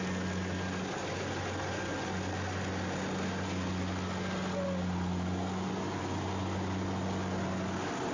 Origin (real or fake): real